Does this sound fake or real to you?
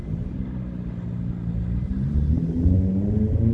real